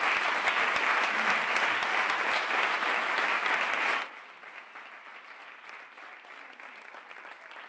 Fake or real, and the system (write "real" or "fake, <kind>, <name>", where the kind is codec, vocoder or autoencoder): real